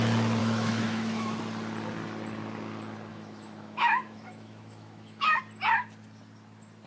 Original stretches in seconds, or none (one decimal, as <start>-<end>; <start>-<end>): 0.0-0.4; 1.4-3.1; 5.4-6.9